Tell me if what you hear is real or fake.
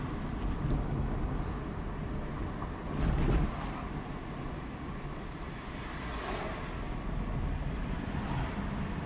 real